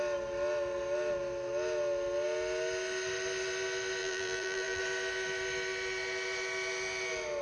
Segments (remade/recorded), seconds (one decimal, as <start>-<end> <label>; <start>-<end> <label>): 0.0-4.0 recorded; 4.0-4.8 remade; 4.8-7.4 recorded